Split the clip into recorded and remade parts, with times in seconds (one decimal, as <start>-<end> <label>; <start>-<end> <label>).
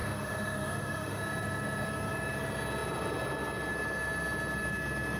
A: 0.0-1.2 remade; 1.2-5.2 recorded